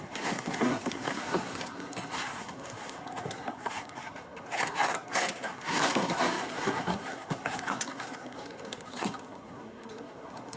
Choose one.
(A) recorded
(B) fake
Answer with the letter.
B